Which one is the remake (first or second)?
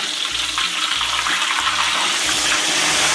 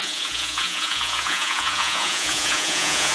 second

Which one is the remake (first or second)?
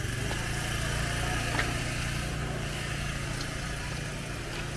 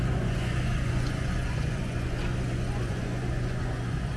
second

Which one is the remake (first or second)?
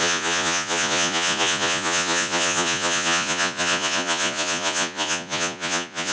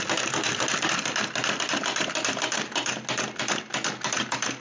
first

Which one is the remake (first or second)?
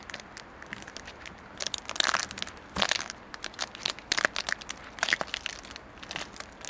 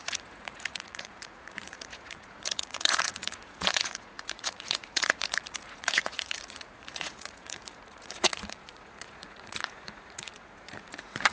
second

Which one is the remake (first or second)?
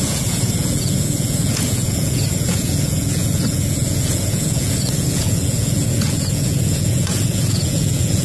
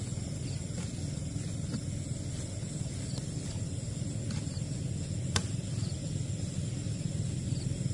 first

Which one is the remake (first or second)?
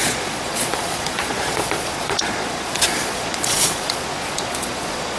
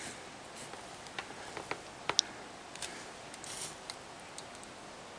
first